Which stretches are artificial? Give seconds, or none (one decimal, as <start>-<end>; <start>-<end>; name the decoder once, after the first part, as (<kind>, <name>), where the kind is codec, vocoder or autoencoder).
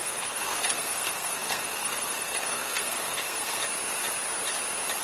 0.0-3.6 (codec, SNAC)